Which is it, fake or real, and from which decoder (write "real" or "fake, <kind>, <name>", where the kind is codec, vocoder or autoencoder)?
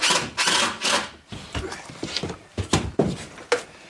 real